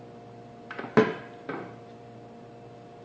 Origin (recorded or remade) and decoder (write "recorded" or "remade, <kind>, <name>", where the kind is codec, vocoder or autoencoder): recorded